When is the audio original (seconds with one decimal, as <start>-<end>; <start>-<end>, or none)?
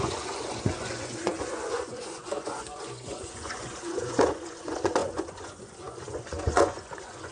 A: none